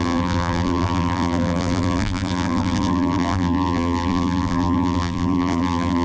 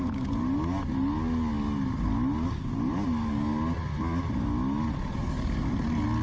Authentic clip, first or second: second